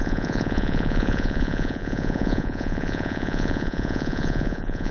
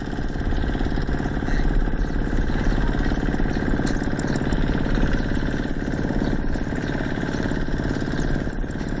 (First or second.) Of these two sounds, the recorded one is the second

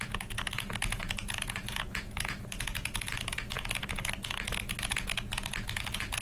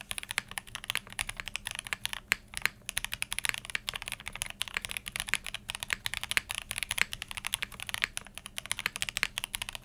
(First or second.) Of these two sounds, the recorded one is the second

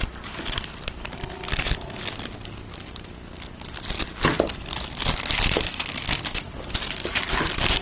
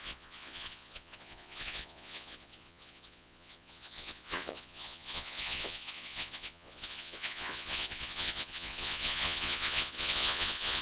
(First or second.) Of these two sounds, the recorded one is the first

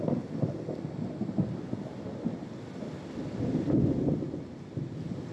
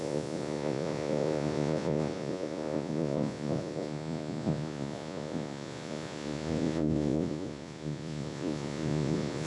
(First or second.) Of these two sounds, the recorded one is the first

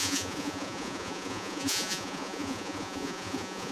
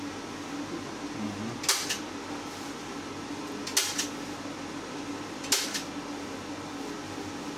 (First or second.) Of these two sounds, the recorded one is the second